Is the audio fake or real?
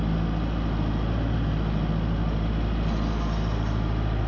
real